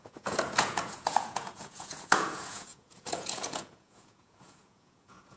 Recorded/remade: remade